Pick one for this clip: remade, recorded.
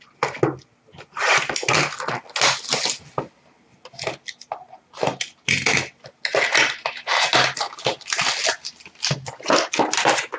recorded